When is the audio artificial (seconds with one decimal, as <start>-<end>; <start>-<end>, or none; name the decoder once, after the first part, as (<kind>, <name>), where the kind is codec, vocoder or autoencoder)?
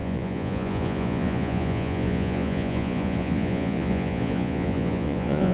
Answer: 0.0-5.5 (vocoder, Vocos)